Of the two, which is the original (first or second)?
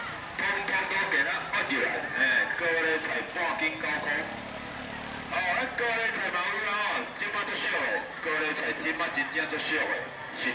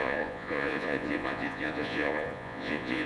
first